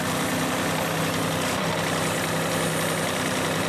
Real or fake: real